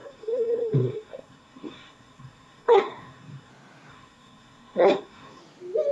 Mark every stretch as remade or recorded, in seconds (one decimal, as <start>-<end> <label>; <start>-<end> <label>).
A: 0.0-3.5 remade; 3.5-3.9 recorded; 3.9-5.4 remade; 5.4-5.9 recorded